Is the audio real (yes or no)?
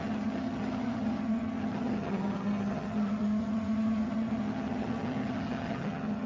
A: no